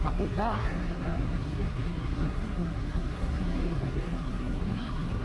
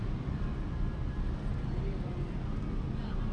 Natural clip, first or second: second